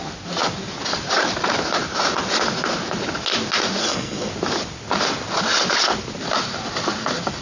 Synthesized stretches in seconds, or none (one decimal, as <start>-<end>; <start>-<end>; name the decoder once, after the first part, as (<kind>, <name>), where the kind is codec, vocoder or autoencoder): 3.8-4.3 (codec, SNAC)